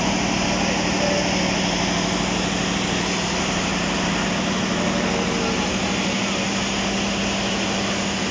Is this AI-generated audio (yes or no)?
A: no